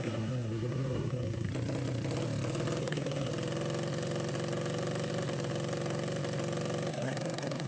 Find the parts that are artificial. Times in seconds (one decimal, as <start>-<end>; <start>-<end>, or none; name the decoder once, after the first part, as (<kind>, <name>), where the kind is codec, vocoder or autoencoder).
0.0-1.5 (codec, SNAC); 2.8-3.3; 6.9-7.7